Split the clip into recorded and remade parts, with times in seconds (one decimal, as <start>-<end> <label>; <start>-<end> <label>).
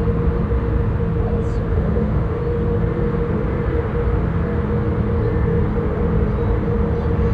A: 0.0-1.7 recorded; 1.7-2.4 remade; 2.4-7.3 recorded